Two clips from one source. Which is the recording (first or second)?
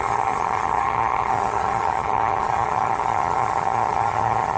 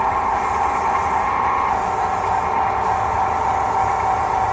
second